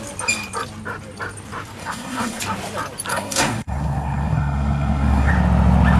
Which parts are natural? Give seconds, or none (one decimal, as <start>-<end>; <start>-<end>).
0.0-1.8; 2.4-3.1; 5.3-6.0